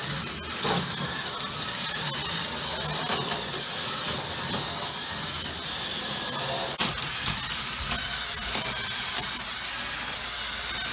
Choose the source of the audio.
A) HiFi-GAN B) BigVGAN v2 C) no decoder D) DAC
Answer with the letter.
C